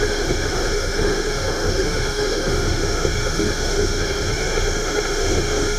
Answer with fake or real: fake